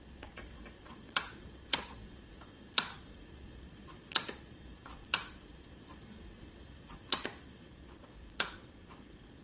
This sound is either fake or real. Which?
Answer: fake